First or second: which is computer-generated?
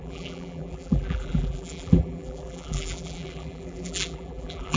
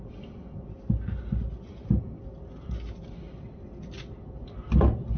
first